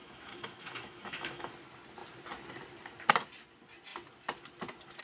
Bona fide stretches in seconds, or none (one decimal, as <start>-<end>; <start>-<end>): 1.5-5.0